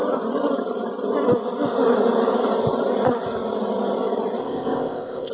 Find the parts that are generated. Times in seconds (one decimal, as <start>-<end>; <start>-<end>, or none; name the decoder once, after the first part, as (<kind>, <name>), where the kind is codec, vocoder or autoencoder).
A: 4.4-5.3 (codec, ZipCodec)